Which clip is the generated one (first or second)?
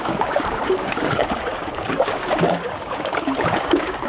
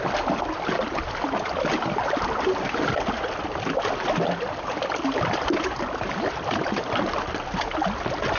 first